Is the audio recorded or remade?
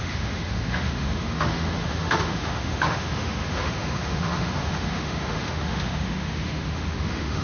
remade